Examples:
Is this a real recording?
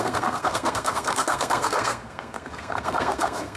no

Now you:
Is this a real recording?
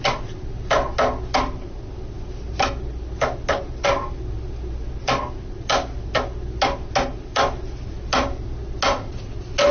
yes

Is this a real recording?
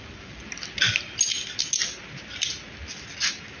yes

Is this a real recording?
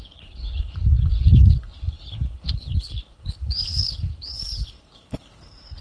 no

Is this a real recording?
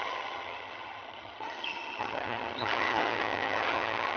no